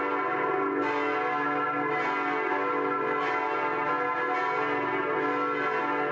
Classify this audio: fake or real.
real